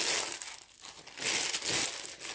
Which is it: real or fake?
real